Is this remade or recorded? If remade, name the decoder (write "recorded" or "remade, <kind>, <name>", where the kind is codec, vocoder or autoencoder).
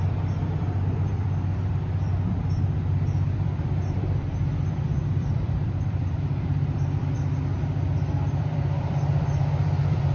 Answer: remade, vocoder, BigVGAN v2